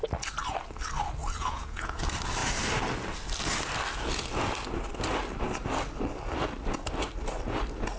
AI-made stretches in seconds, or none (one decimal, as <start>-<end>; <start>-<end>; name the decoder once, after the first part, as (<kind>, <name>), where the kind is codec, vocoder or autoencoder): 1.2-2.0 (vocoder, Vocos)